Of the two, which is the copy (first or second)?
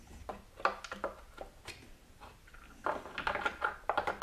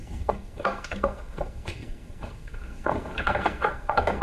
second